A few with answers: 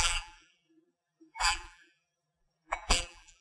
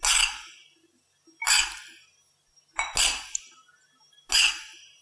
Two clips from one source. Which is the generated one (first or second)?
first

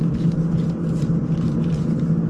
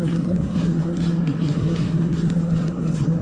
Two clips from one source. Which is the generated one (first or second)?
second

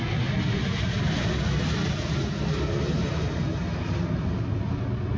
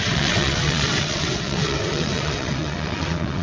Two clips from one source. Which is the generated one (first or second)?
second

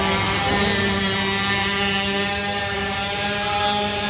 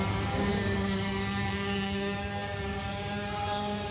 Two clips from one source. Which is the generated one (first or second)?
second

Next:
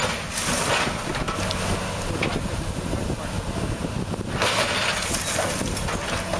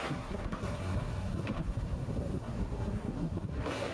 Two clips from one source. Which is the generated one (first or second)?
second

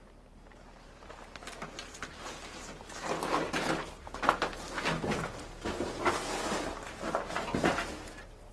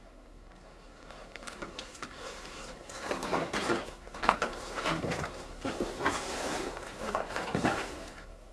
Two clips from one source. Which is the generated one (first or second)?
second